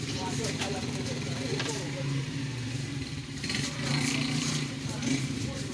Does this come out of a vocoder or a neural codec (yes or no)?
yes